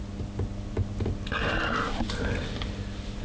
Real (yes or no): yes